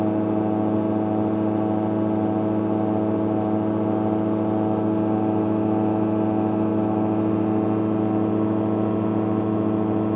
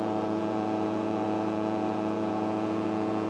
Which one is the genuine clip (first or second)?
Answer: first